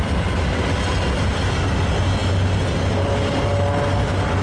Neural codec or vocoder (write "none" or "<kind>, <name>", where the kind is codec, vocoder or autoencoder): none